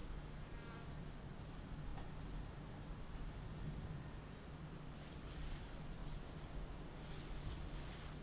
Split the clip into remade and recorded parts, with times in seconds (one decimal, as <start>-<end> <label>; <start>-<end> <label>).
0.0-8.2 recorded